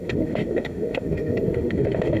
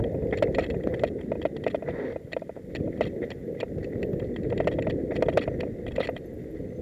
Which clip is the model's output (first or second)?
first